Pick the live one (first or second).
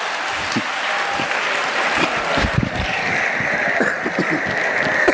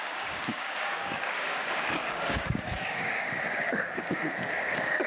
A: first